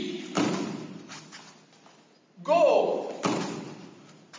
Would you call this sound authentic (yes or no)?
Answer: yes